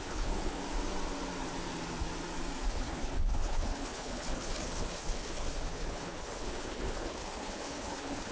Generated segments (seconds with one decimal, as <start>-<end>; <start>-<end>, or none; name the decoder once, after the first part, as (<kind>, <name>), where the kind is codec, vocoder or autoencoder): 0.0-0.6 (codec, HILCodec); 2.7-8.3